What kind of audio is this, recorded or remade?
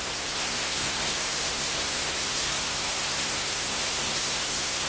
remade